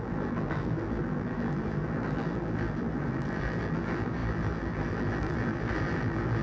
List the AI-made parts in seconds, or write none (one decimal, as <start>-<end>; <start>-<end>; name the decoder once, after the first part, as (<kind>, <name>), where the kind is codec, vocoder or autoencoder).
0.0-6.4 (vocoder, BigVGAN v2)